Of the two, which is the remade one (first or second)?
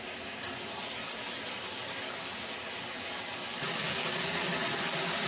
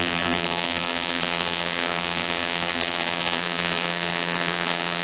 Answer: second